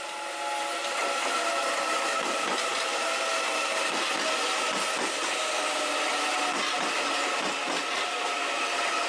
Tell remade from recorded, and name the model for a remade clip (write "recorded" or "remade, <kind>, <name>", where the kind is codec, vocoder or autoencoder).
recorded